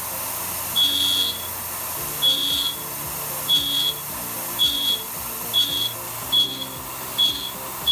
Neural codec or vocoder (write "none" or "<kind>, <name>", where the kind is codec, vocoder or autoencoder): none